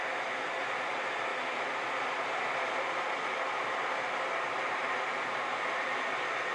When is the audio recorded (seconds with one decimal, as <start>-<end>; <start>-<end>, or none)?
0.0-1.3; 5.2-6.5